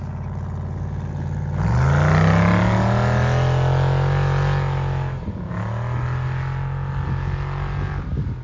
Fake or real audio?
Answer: real